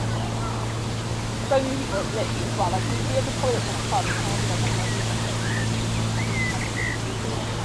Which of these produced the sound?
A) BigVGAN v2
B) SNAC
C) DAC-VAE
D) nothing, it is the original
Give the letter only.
D